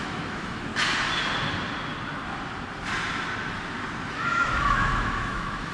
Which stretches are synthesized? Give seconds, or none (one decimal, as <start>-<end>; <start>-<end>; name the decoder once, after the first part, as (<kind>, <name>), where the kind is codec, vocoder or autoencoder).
0.0-0.7 (autoencoder, DAC-VAE); 4.1-5.7